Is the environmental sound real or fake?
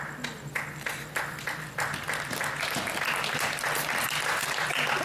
real